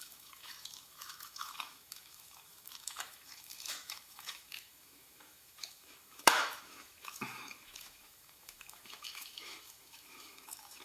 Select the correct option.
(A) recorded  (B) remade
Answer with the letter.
B